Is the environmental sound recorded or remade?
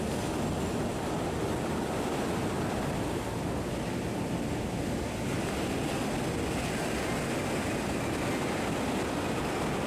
recorded